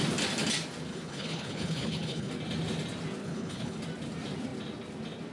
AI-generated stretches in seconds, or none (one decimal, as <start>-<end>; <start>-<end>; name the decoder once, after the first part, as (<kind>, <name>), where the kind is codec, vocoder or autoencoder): 0.9-2.3 (codec, HILCodec); 3.2-3.8